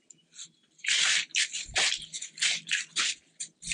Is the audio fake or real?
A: fake